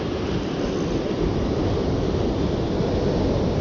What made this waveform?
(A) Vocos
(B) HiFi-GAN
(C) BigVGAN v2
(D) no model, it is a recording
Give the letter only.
D